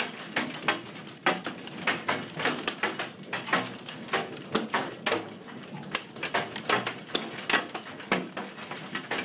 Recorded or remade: recorded